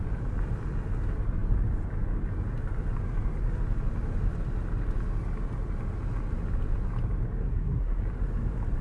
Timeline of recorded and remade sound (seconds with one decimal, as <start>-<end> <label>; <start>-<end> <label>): 0.0-7.4 recorded; 7.4-8.0 remade; 8.0-8.8 recorded